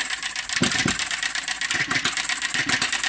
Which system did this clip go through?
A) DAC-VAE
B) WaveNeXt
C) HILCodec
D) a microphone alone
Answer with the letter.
D